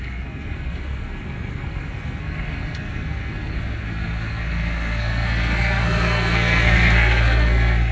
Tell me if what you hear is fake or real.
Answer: fake